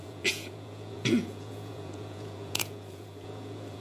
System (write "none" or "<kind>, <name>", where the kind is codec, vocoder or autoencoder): vocoder, Vocos